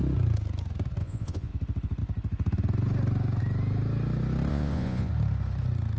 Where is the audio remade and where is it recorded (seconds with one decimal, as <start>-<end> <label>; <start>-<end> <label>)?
0.0-1.0 recorded; 1.0-1.5 remade; 1.5-4.5 recorded; 4.5-5.1 remade; 5.1-6.0 recorded